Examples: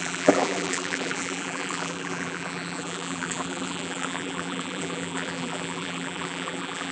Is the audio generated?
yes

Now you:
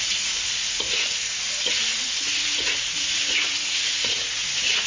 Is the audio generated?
yes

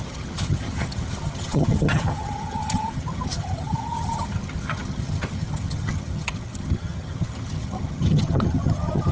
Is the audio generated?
yes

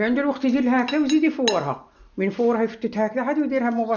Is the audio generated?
no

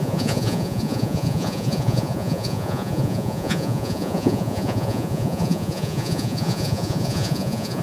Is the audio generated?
yes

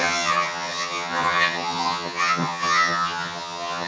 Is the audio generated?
yes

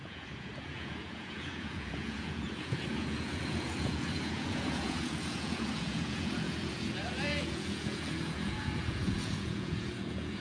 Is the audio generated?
yes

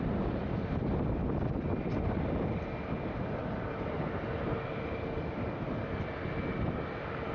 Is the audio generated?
no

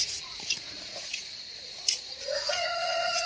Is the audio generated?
yes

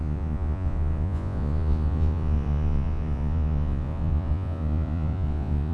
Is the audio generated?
yes